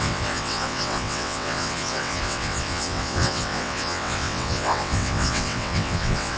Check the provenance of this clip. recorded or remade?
remade